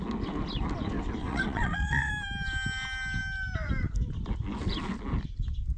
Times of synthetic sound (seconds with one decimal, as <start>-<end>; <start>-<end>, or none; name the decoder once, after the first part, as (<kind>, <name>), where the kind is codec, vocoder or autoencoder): 1.2-2.1 (vocoder, WaveNeXt)